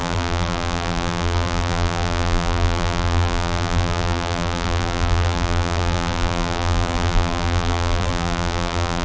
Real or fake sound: fake